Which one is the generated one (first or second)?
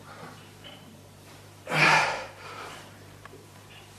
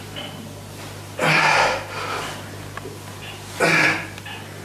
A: first